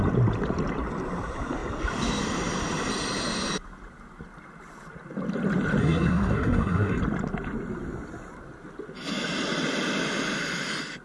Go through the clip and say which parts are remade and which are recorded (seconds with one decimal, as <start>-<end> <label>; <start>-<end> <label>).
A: 0.0-5.8 recorded; 5.8-7.0 remade; 7.0-11.0 recorded